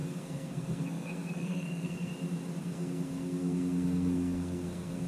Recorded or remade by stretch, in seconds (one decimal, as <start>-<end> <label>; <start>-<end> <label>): 0.0-2.1 remade; 2.1-2.6 recorded; 2.6-5.1 remade